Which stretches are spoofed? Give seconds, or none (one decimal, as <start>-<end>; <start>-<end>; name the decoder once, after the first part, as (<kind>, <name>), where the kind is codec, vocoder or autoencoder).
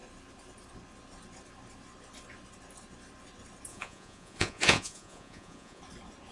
3.7-5.8 (vocoder, Vocos)